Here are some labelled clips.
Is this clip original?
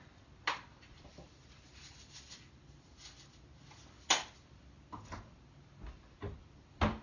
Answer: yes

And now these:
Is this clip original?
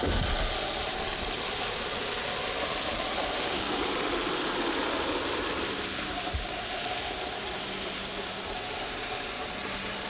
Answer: yes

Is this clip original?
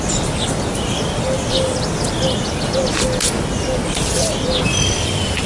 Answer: no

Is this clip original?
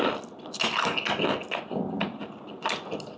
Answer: yes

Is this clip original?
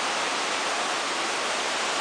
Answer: yes